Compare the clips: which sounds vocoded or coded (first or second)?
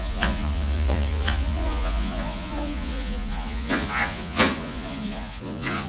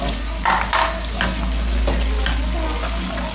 first